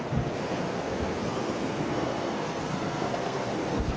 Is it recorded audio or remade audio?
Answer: remade